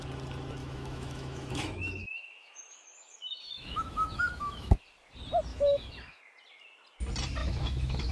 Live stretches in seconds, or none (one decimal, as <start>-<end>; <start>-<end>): 0.0-0.6; 4.8-5.5; 6.2-7.4